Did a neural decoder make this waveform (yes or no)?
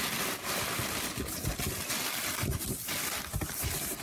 no